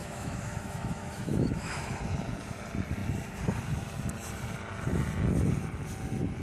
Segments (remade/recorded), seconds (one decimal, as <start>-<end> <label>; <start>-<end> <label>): 0.0-2.0 remade; 2.0-6.4 recorded